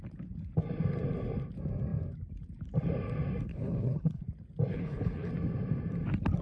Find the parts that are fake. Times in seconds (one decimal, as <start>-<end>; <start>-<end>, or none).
3.5-4.2; 4.7-5.3